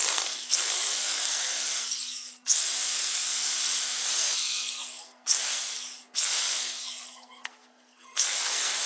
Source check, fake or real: fake